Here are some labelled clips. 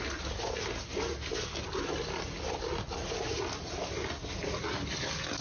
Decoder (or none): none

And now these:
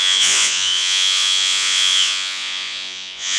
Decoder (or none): vocoder, Vocos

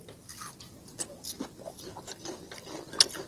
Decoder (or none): none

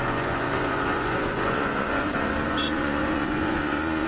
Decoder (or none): vocoder, Vocos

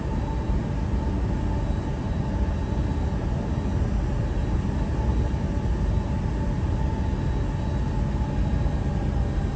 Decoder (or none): none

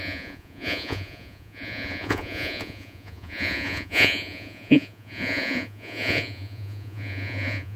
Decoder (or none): vocoder, Vocos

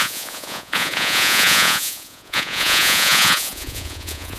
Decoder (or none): vocoder, Vocos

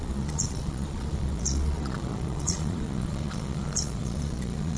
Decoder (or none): vocoder, Vocos